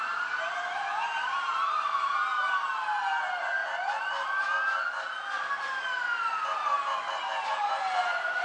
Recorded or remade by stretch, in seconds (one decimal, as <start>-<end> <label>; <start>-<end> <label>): 0.0-2.2 remade; 2.2-2.8 recorded; 2.8-3.6 remade; 3.6-7.5 recorded; 7.5-8.4 remade